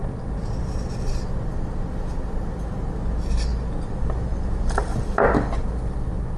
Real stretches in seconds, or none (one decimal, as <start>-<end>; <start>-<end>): 0.0-6.4